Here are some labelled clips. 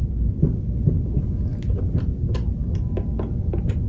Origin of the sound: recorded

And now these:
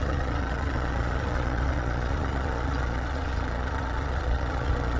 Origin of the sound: remade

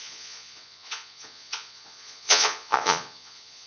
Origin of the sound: remade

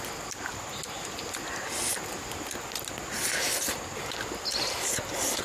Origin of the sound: recorded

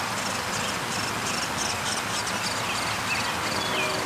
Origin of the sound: recorded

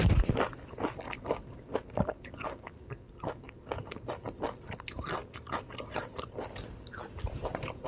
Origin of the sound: recorded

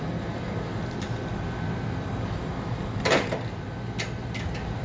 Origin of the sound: recorded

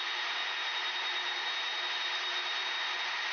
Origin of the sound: recorded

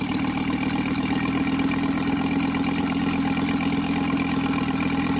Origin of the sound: recorded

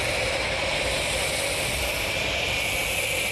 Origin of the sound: recorded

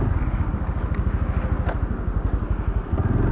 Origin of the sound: recorded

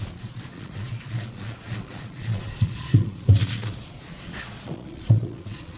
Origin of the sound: remade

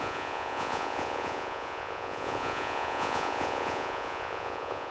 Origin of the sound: remade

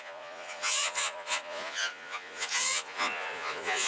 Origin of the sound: remade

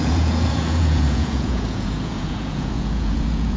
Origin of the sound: remade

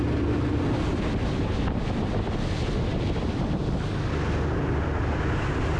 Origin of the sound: recorded